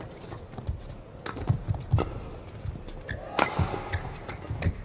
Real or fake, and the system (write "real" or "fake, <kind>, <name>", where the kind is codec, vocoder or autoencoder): real